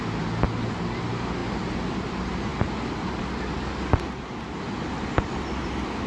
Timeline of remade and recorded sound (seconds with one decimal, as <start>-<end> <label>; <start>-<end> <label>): 0.0-6.1 recorded